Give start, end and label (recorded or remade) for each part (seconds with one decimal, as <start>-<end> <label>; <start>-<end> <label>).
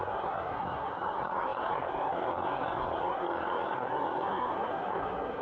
0.0-5.4 remade